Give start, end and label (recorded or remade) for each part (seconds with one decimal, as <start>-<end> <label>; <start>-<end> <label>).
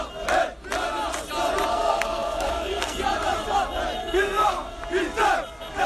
0.0-1.7 recorded; 1.7-3.0 remade; 3.0-4.0 recorded; 4.0-4.8 remade; 4.8-5.9 recorded